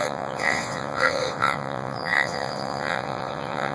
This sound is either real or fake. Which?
fake